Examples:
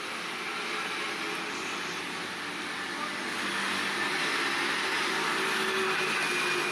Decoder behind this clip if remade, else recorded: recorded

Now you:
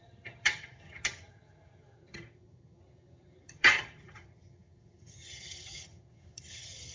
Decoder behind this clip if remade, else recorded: remade, vocoder, HiFi-GAN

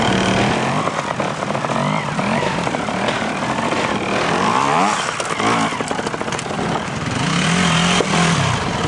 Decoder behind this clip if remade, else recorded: recorded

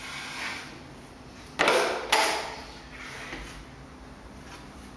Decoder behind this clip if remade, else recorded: recorded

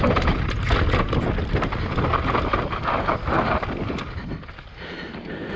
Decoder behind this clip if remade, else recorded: recorded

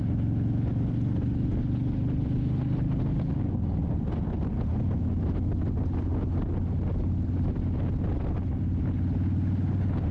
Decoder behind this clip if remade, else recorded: recorded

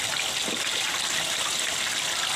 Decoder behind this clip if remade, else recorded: recorded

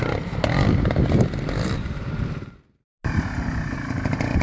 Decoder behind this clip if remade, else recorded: recorded